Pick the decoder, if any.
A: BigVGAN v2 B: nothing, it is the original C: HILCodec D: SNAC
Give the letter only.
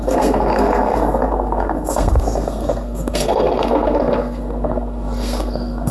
D